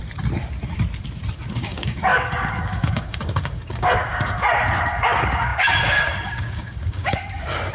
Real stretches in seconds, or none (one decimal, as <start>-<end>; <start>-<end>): 0.0-1.5